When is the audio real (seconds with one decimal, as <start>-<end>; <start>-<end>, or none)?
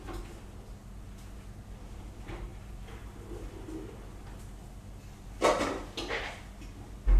0.0-7.2